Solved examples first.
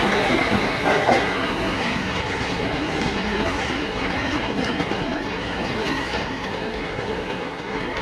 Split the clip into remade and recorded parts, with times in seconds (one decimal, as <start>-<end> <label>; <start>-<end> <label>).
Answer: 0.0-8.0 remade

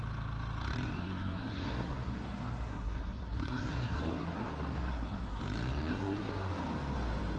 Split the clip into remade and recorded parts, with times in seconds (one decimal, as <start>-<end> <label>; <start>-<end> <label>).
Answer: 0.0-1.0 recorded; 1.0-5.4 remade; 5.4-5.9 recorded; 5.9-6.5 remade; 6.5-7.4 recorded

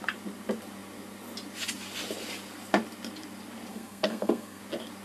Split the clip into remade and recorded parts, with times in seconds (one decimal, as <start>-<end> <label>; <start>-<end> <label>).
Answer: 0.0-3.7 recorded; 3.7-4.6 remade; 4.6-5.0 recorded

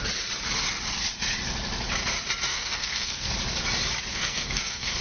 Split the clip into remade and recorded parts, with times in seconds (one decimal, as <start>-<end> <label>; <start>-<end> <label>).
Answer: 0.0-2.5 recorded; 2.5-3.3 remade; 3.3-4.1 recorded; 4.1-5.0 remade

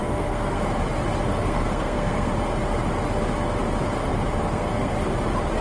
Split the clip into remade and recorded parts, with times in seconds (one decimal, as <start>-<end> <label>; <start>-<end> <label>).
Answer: 0.0-0.6 remade; 0.6-1.3 recorded; 1.3-2.3 remade; 2.3-4.4 recorded; 4.4-4.9 remade; 4.9-5.6 recorded

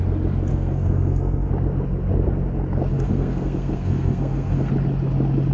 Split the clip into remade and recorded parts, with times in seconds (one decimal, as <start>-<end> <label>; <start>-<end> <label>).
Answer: 0.0-0.5 recorded; 0.5-1.5 remade; 1.5-2.9 recorded; 2.9-4.7 remade; 4.7-5.5 recorded

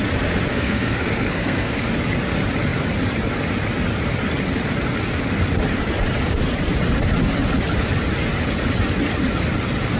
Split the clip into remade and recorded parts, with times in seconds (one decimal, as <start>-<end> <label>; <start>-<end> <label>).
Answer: 0.0-0.5 recorded; 0.5-1.8 remade; 1.8-10.0 recorded

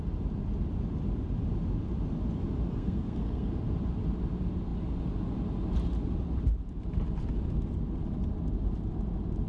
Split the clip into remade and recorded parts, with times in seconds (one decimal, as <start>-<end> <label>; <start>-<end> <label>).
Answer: 0.0-2.7 recorded; 2.7-3.5 remade; 3.5-9.5 recorded